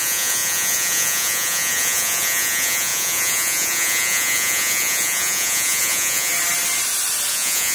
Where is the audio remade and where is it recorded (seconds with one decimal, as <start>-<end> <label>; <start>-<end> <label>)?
0.0-6.3 remade; 6.3-7.3 recorded; 7.3-7.7 remade